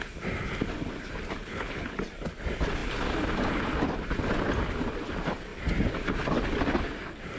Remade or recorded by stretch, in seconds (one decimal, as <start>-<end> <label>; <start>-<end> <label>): 0.0-1.4 recorded; 1.4-2.0 remade; 2.0-7.4 recorded